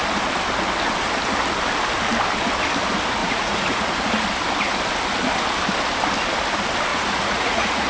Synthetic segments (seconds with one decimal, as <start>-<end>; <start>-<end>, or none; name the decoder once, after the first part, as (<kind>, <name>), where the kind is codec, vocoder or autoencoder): 3.2-4.1 (vocoder, Vocos); 6.9-7.9